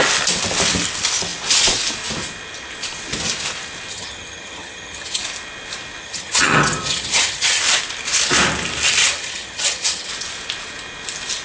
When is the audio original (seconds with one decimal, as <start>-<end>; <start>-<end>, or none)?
0.0-3.9; 5.2-6.0; 7.6-9.0; 10.1-11.4